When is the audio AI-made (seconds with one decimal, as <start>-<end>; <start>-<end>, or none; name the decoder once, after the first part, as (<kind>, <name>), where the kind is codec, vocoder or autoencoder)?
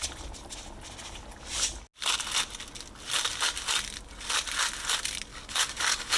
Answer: 5.3-6.2 (codec, DAC)